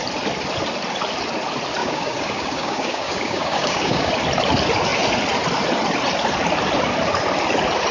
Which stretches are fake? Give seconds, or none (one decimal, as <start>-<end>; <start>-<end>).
1.8-4.1